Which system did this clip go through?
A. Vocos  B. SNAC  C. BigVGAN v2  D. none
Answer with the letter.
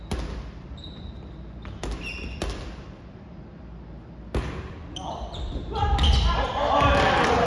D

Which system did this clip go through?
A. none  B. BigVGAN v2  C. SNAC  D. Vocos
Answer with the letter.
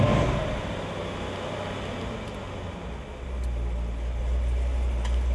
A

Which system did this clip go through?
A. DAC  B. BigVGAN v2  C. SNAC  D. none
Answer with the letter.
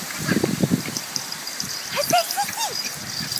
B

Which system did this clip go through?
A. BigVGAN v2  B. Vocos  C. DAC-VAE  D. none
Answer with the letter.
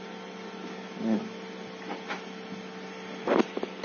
D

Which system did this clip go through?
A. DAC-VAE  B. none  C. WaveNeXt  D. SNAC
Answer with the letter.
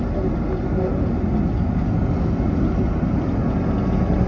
B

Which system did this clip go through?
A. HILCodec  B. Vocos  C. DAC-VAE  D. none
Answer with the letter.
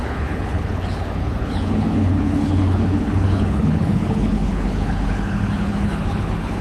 A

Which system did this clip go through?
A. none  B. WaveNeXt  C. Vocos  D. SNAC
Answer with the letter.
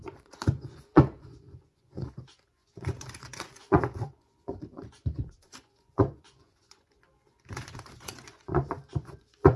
C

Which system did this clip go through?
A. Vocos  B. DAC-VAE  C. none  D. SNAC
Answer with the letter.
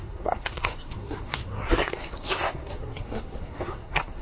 D